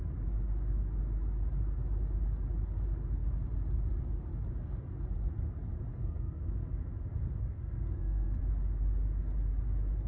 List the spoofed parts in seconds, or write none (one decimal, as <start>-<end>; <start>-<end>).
5.9-6.7; 7.4-8.4